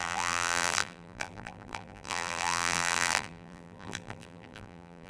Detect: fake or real fake